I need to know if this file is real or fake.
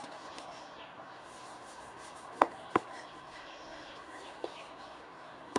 fake